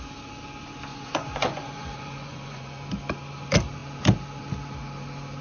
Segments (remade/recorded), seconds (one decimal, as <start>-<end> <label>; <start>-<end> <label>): 0.0-0.9 recorded; 0.9-2.8 remade; 2.8-5.4 recorded